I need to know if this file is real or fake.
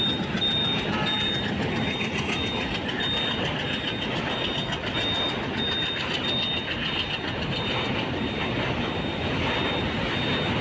real